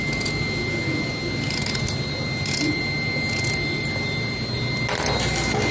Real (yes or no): yes